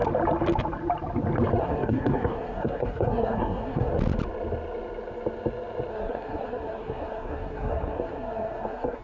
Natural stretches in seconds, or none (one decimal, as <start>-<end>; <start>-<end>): 0.0-1.6; 3.9-5.9